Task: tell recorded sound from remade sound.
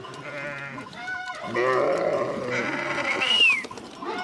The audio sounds recorded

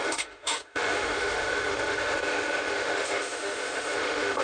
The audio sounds remade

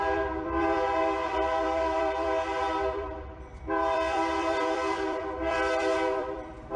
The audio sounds remade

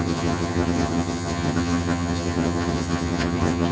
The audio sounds remade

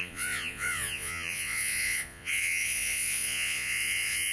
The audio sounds remade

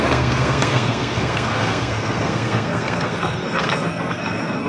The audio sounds remade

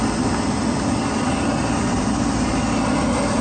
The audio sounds recorded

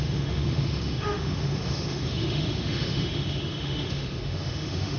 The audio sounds remade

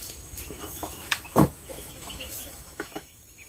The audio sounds remade